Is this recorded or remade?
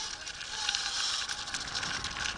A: recorded